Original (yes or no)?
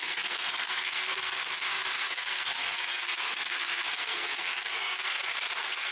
no